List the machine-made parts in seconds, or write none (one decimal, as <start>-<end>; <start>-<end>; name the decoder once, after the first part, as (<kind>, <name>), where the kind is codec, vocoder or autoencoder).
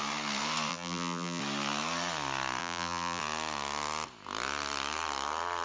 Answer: 0.7-1.4 (vocoder, BigVGAN v2); 2.6-3.2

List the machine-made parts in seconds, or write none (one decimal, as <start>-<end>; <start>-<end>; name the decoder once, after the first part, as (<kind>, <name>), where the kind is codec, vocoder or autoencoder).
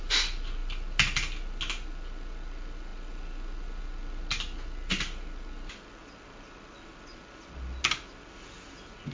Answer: none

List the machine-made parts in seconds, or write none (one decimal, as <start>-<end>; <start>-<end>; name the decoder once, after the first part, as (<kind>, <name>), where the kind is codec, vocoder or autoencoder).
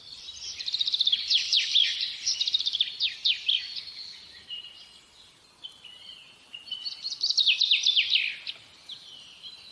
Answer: 0.0-3.2 (vocoder, BigVGAN v2); 5.4-6.5; 7.6-9.7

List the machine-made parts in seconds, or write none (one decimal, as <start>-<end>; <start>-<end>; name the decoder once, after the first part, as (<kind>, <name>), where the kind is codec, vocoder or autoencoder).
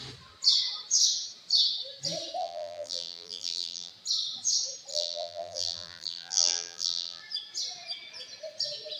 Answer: 2.4-3.9 (vocoder, BigVGAN v2); 4.9-7.2